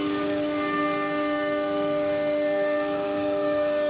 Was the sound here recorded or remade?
remade